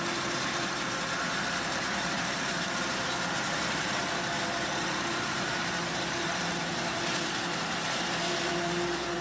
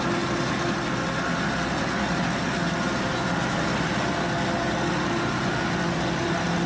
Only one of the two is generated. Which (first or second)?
first